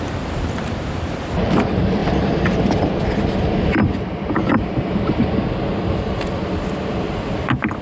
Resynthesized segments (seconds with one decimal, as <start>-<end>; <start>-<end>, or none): 2.0-2.7; 4.4-5.2

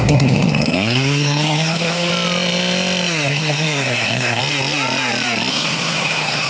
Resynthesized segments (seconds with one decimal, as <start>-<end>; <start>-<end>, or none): 0.0-2.1; 3.3-4.4; 5.5-6.5

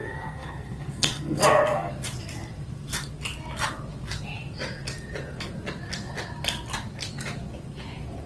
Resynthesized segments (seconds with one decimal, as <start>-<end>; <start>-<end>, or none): 0.0-1.9

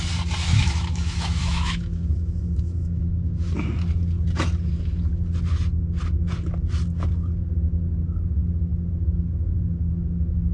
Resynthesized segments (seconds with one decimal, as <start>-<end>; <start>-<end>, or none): 0.5-3.4